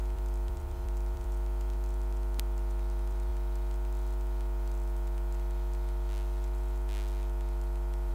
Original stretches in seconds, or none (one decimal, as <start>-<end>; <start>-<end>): 3.3-8.1